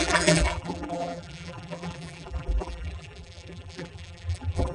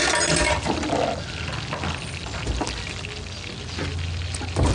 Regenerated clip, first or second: first